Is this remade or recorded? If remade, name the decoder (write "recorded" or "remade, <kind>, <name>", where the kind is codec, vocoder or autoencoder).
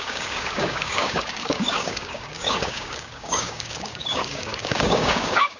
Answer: remade, codec, DAC